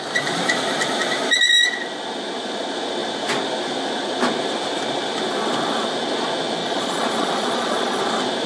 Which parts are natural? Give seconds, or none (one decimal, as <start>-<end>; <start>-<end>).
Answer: 0.0-6.6; 8.0-8.5